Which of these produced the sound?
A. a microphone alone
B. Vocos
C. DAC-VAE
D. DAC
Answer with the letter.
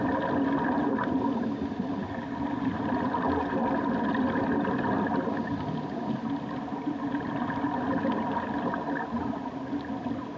A